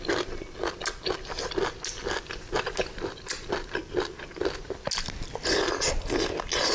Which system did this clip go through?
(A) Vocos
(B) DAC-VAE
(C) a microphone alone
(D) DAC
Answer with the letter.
C